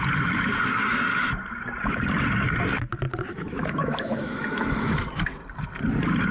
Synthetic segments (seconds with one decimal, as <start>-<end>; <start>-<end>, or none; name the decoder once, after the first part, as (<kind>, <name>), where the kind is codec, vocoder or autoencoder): 3.3-5.4 (autoencoder, DAC-VAE)